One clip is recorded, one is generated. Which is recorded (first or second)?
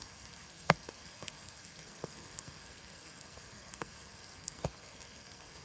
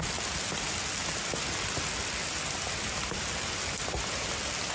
second